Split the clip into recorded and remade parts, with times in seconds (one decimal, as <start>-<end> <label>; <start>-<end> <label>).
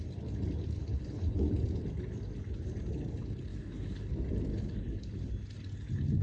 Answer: 0.0-0.8 recorded; 0.8-1.5 remade; 1.5-3.5 recorded; 3.5-4.1 remade; 4.1-4.5 recorded; 4.5-5.3 remade; 5.3-6.2 recorded